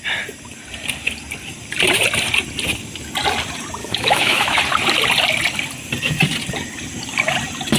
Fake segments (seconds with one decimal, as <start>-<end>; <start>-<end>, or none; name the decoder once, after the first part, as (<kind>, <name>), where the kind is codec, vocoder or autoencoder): 3.8-4.6 (autoencoder, DAC-VAE)